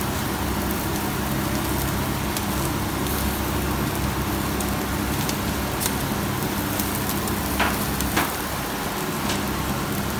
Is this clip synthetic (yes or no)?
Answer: no